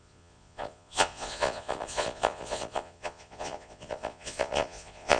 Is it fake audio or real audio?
fake